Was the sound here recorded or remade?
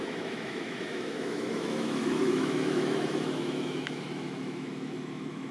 remade